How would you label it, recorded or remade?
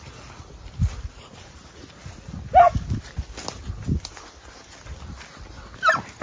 recorded